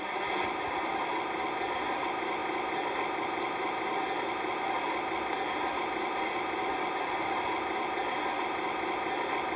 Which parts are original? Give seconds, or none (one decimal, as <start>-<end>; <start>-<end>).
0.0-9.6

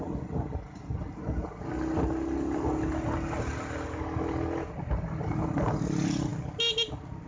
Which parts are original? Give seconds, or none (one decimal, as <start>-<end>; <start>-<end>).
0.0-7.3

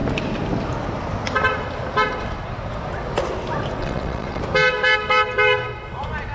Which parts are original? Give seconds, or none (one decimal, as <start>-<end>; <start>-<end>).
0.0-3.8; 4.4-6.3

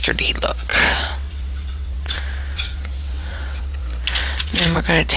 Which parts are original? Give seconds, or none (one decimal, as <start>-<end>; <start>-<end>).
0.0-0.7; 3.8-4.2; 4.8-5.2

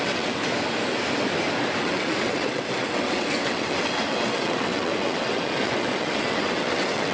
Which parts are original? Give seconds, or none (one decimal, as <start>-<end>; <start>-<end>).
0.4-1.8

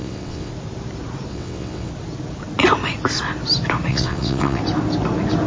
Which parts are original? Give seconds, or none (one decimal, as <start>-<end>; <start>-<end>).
0.5-1.3; 1.9-3.9; 4.6-5.5

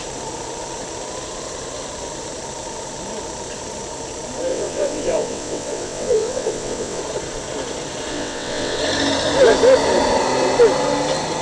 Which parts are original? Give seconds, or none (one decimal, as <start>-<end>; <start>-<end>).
0.0-4.5; 7.0-8.1; 8.8-11.4

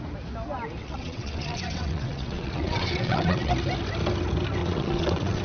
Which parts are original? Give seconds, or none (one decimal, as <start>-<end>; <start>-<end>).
0.0-0.8; 3.5-4.6